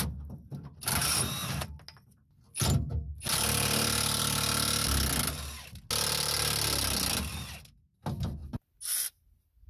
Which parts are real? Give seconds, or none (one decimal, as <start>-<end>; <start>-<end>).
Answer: 0.0-9.7